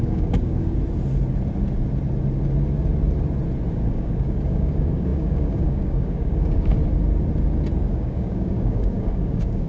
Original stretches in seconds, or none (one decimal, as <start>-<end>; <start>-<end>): 0.7-3.7; 6.8-7.9